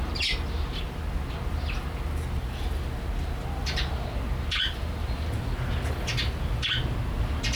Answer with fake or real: real